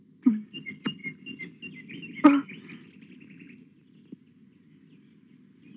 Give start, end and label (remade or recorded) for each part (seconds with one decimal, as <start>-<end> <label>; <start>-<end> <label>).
0.0-5.8 recorded

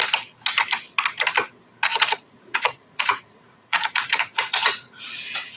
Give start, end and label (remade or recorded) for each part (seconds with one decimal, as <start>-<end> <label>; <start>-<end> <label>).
0.0-1.9 recorded; 1.9-5.0 remade; 5.0-5.6 recorded

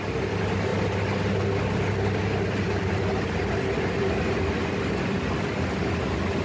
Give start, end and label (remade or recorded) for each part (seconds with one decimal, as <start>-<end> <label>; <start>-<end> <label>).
0.0-6.4 recorded

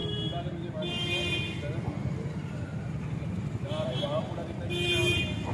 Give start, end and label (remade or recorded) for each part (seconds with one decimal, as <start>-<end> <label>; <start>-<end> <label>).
0.0-5.5 recorded